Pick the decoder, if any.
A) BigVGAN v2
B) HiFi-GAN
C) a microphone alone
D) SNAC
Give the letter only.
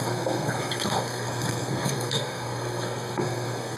D